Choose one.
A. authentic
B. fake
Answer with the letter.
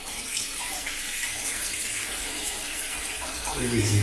B